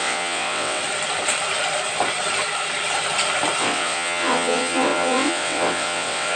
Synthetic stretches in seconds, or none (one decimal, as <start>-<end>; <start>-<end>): 0.0-0.8; 3.6-6.4